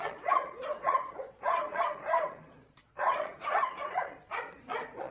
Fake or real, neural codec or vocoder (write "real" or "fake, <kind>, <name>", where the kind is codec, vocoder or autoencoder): fake, vocoder, Vocos